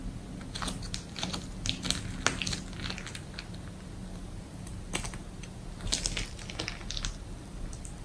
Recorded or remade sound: recorded